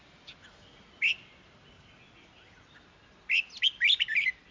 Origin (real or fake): fake